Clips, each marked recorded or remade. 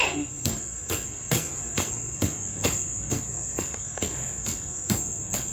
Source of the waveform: remade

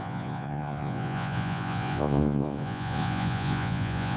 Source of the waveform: remade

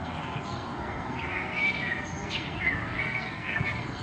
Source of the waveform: remade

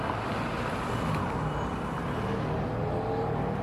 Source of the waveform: recorded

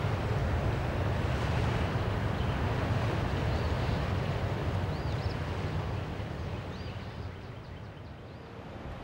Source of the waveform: recorded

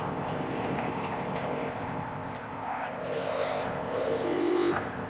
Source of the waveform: remade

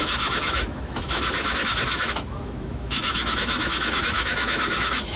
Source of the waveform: remade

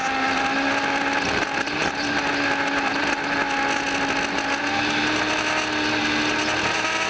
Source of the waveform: recorded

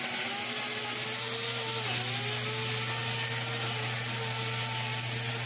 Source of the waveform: recorded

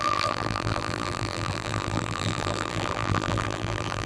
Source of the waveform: remade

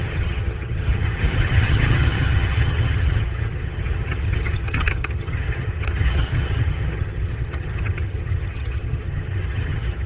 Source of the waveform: remade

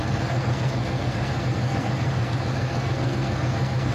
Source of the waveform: remade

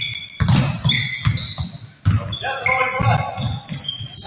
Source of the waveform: recorded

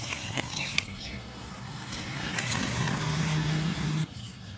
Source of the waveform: remade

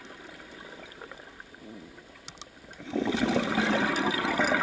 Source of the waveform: recorded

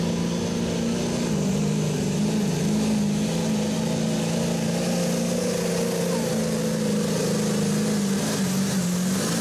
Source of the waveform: recorded